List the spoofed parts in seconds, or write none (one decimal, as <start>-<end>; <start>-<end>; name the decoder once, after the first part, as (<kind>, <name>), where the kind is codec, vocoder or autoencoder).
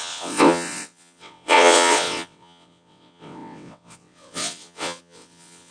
0.0-5.7 (vocoder, WaveNeXt)